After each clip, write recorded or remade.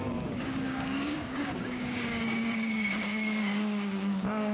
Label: remade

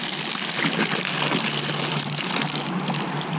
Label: recorded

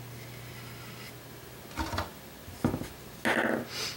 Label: recorded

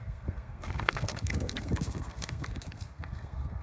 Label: remade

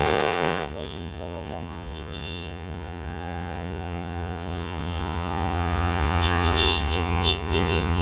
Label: remade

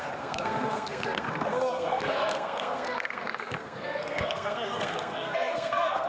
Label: remade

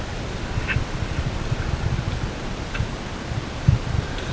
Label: recorded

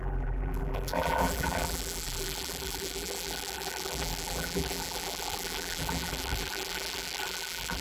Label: remade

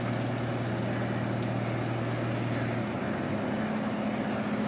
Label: recorded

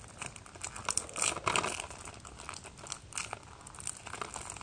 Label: recorded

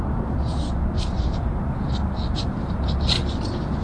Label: remade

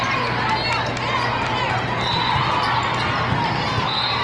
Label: recorded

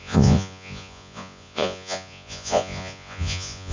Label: remade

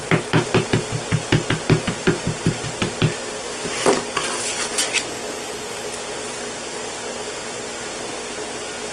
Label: recorded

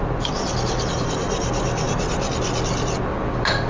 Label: recorded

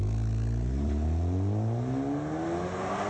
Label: recorded